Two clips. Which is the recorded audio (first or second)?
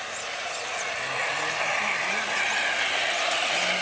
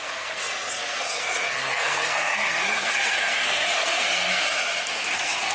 first